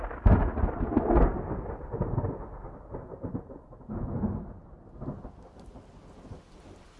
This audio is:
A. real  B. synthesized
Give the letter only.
A